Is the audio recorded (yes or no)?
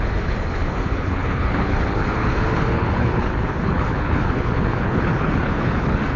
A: no